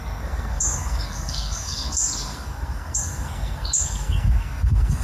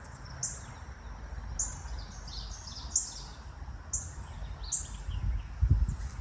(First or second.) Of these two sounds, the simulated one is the first